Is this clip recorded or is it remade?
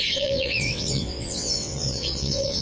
remade